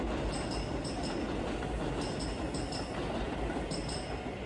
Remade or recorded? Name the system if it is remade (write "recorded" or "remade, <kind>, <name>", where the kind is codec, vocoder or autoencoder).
recorded